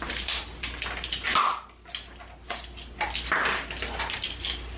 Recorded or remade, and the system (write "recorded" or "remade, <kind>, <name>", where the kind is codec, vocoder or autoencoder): recorded